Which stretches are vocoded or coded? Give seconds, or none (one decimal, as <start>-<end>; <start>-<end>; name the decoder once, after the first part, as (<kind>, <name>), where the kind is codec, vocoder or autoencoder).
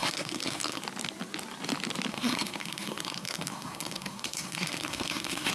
0.0-0.8 (codec, SNAC); 2.1-5.5